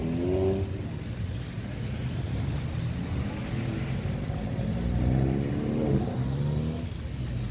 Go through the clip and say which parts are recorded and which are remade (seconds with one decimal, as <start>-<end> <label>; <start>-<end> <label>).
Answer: 0.0-7.5 recorded